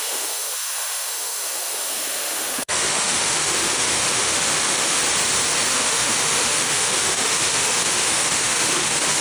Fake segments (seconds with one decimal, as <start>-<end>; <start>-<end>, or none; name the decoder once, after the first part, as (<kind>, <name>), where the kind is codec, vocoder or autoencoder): 0.0-5.0 (autoencoder, DAC-VAE); 5.7-9.2